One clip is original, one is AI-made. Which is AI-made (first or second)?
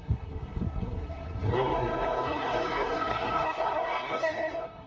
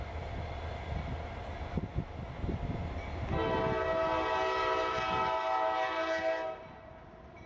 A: first